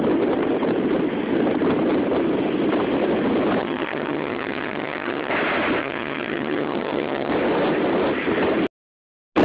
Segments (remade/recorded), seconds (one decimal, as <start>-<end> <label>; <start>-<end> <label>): 0.0-3.6 recorded; 3.6-5.3 remade; 5.3-5.8 recorded; 5.8-7.3 remade; 7.3-9.4 recorded